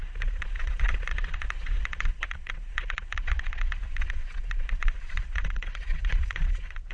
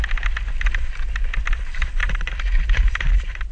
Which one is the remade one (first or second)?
first